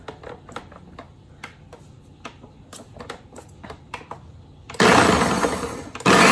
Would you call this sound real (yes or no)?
yes